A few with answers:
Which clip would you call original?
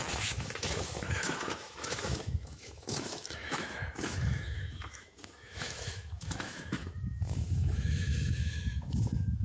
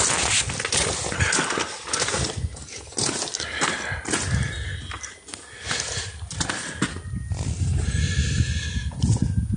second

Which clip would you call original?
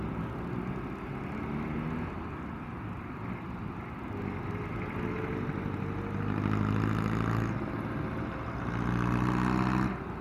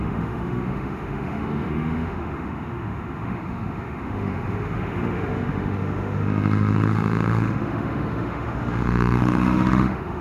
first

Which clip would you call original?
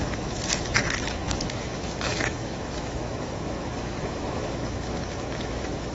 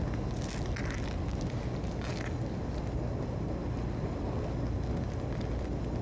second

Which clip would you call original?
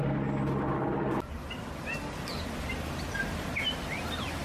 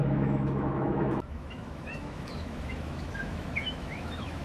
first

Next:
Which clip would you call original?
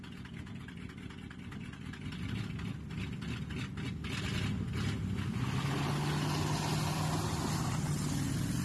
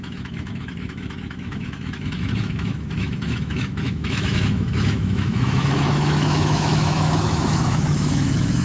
first